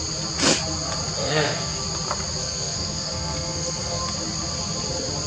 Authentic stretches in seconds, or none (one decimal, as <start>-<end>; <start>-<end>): 0.0-1.2; 1.8-2.4; 4.0-5.3